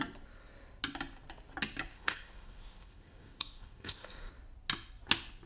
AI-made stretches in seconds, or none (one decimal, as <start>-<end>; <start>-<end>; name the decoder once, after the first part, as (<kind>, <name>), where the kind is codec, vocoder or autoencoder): 1.9-4.3 (codec, ZipCodec)